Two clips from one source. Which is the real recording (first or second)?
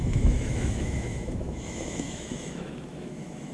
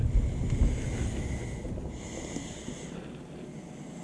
second